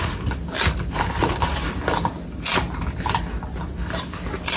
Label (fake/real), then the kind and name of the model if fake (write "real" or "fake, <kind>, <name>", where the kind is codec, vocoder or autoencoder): real